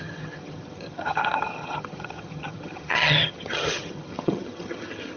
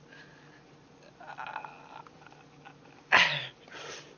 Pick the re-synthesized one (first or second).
first